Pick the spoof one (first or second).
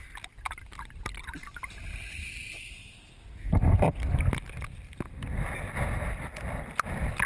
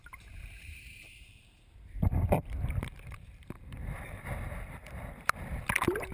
second